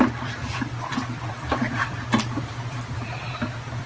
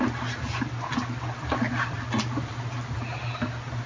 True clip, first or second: second